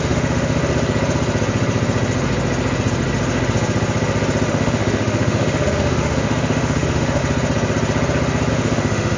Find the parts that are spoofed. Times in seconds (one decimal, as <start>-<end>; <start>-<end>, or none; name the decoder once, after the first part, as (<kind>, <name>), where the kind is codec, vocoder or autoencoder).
0.0-0.6 (autoencoder, DAC-VAE); 4.5-7.2; 8.5-9.2